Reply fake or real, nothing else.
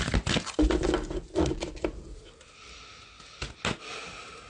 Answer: real